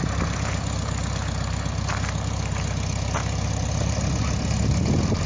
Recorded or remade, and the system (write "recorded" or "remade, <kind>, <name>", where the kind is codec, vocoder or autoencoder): recorded